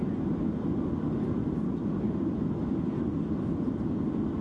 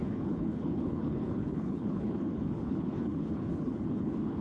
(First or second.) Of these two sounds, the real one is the first